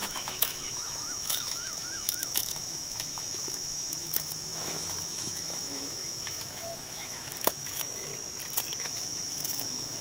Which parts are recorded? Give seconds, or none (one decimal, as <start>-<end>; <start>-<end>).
8.1-8.8